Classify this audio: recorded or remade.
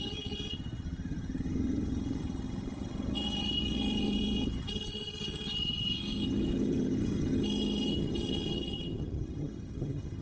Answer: remade